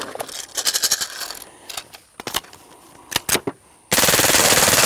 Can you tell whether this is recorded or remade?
recorded